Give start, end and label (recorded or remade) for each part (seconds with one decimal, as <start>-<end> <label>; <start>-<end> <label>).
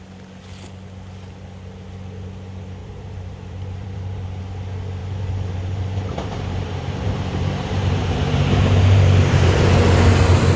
0.0-2.8 recorded; 2.8-4.4 remade; 4.4-5.0 recorded; 5.0-9.6 remade; 9.6-10.6 recorded